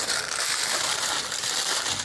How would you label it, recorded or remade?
recorded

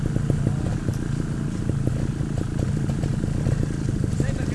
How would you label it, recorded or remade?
recorded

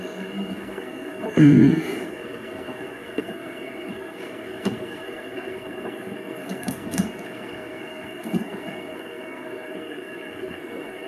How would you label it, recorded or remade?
remade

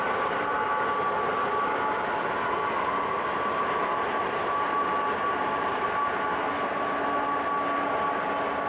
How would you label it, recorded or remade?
recorded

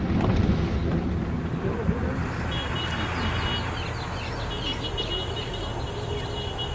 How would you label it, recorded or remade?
recorded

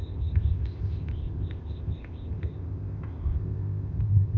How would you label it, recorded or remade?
remade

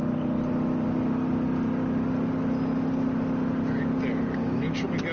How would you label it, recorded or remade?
recorded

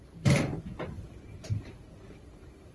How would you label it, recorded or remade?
remade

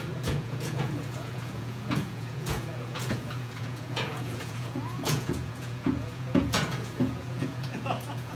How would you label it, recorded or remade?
remade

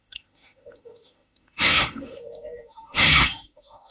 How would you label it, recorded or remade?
remade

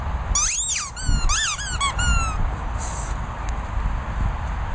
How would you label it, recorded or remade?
recorded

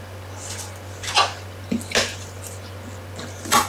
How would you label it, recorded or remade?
recorded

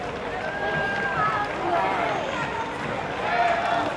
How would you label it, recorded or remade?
recorded